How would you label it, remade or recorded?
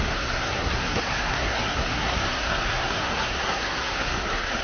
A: remade